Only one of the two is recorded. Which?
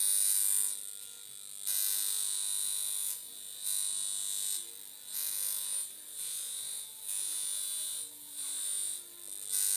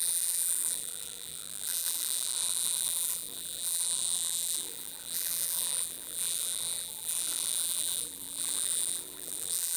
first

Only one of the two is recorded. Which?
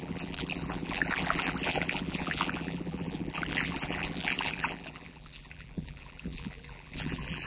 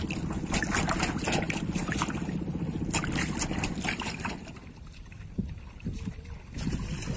second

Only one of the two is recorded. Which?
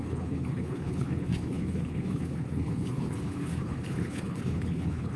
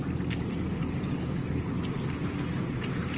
second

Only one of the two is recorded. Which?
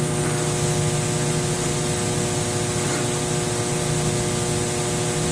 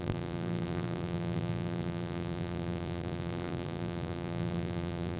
first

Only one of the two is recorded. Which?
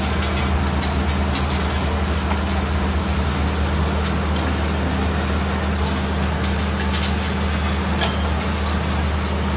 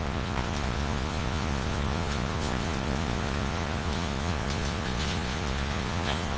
first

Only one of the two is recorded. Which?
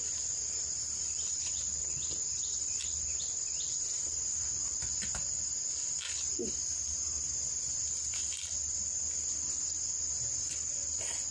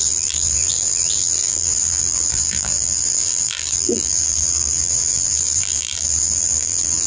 first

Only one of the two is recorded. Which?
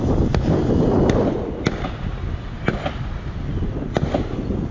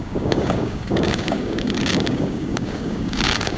first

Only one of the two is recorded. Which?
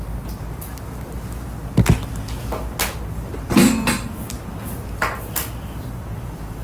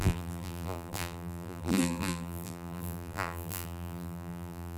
first